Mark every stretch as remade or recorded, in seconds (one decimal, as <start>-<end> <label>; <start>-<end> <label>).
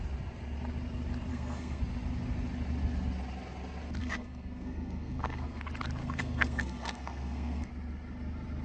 0.0-1.3 recorded; 1.3-1.8 remade; 1.8-4.0 recorded; 4.0-5.6 remade; 5.6-6.0 recorded; 6.0-7.7 remade; 7.7-8.6 recorded